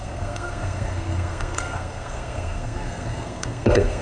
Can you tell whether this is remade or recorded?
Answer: remade